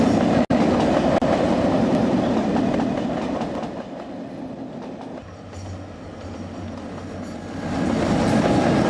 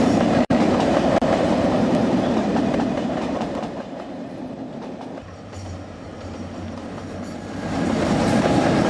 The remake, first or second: second